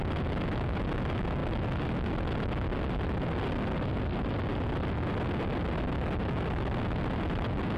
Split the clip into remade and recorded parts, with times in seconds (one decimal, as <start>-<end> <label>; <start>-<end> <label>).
0.0-7.8 recorded